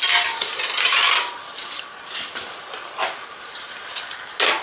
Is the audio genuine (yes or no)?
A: yes